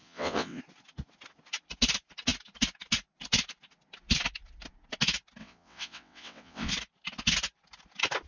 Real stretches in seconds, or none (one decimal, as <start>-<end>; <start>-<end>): 0.6-5.4; 6.7-8.3